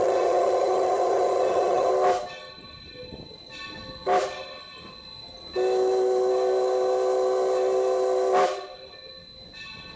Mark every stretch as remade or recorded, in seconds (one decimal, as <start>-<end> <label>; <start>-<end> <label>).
0.0-1.9 remade; 1.9-10.0 recorded